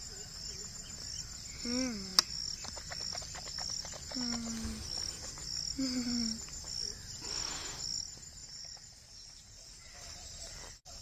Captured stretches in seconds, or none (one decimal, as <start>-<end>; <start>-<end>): 0.0-8.4; 10.4-11.0